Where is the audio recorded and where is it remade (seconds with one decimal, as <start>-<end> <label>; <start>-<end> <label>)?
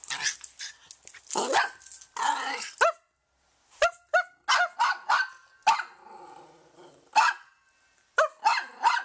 0.0-9.0 recorded